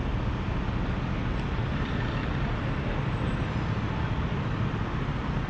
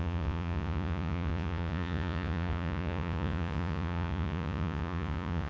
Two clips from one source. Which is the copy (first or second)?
second